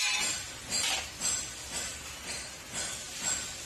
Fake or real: real